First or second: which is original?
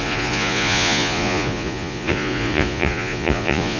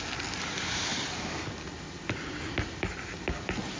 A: second